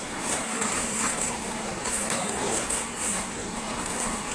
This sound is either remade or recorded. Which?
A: remade